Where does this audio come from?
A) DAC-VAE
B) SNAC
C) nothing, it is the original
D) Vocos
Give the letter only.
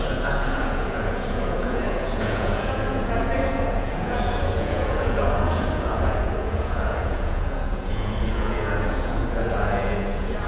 D